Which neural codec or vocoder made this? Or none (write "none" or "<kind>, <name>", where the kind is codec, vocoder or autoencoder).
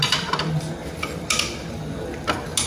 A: none